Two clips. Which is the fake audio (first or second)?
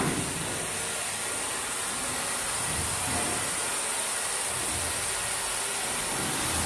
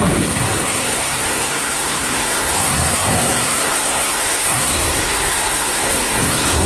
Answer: second